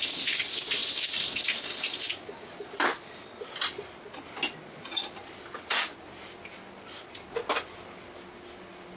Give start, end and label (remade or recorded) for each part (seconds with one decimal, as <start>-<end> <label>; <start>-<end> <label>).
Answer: 0.0-9.0 recorded

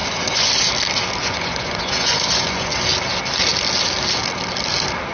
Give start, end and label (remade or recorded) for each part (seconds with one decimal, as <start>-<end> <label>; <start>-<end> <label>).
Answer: 0.0-0.7 remade; 0.7-1.2 recorded; 1.2-2.7 remade; 2.7-5.1 recorded

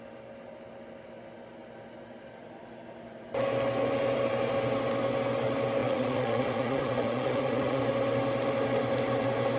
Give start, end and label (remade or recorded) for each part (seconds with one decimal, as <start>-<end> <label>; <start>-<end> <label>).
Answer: 0.0-5.8 recorded; 5.8-7.8 remade; 7.8-9.6 recorded

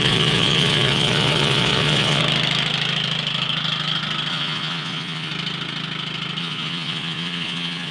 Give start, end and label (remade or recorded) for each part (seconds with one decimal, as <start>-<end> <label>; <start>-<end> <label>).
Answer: 0.0-2.2 remade; 2.2-4.3 recorded; 4.3-5.3 remade; 5.3-6.4 recorded; 6.4-7.9 remade

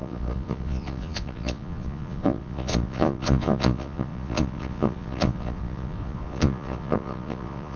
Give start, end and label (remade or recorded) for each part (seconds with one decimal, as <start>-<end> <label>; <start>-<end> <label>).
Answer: 0.0-7.8 remade